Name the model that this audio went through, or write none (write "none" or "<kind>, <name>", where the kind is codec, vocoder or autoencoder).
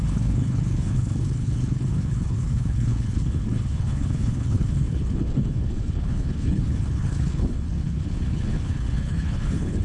codec, HILCodec